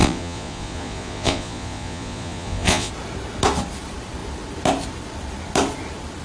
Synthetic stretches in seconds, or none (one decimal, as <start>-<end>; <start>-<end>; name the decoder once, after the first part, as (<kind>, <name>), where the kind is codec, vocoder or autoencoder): 0.0-2.9 (vocoder, Vocos)